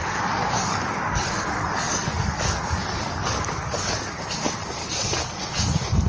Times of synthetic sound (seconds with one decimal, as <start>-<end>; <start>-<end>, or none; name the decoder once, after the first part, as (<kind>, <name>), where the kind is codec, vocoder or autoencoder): 0.4-4.1 (codec, DAC); 4.8-5.4